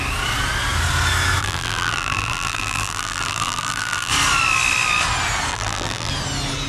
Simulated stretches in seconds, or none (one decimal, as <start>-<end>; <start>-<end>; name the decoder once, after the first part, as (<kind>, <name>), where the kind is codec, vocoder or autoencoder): 1.4-4.1 (vocoder, BigVGAN v2); 5.5-6.1